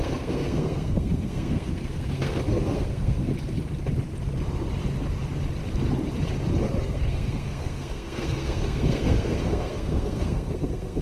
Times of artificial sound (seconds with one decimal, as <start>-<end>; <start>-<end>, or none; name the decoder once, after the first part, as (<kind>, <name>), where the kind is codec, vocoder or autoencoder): 0.0-3.3 (codec, SNAC); 6.8-11.0